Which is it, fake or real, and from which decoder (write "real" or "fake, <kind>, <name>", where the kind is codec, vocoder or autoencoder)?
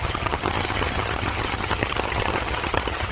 fake, vocoder, HiFi-GAN